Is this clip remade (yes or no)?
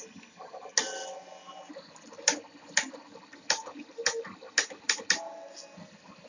no